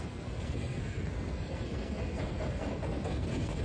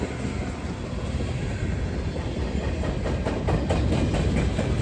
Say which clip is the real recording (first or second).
second